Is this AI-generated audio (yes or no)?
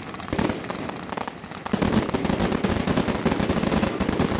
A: no